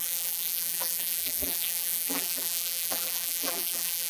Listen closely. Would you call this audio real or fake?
fake